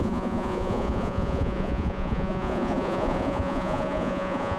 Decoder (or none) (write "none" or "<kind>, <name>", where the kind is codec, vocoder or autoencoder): vocoder, Vocos